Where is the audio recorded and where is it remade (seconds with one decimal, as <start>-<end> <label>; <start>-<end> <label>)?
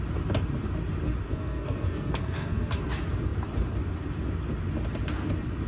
0.0-1.3 recorded; 1.3-2.8 remade; 2.8-5.7 recorded